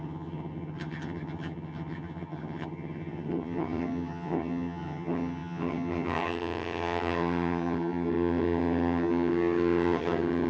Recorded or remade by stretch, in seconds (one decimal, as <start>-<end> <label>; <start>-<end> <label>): 0.0-10.5 remade